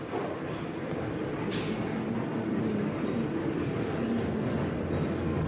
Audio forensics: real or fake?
real